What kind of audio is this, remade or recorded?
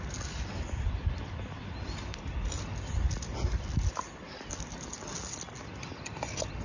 recorded